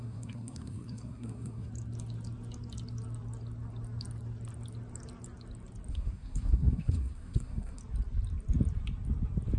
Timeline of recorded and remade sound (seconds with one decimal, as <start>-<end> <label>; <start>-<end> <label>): 0.0-1.7 remade; 1.7-5.9 recorded; 5.9-7.8 remade; 7.8-9.6 recorded